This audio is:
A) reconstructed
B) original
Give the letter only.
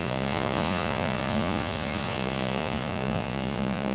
A